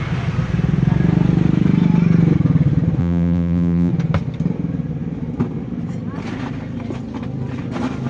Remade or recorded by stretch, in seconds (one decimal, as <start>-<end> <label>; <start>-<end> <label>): 0.0-3.0 recorded; 3.0-3.9 remade; 3.9-8.1 recorded